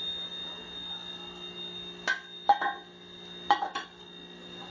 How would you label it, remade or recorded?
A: recorded